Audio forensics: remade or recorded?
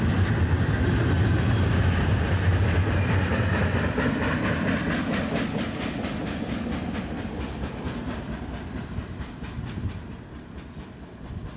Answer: recorded